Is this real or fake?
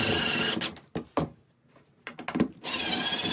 real